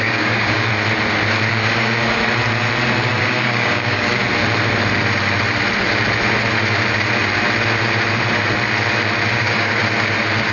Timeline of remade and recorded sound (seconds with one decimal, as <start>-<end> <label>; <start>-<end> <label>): 0.0-0.7 remade; 0.7-1.5 recorded; 1.5-2.2 remade; 2.2-3.2 recorded; 3.2-4.2 remade; 4.2-9.3 recorded; 9.3-9.8 remade; 9.8-10.5 recorded